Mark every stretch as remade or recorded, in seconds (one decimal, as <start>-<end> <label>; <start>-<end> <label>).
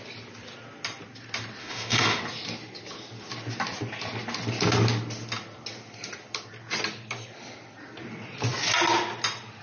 0.0-1.6 recorded; 1.6-2.2 remade; 2.2-9.6 recorded